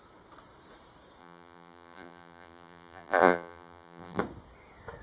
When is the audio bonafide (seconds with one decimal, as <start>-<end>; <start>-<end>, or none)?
0.0-1.2; 4.2-5.0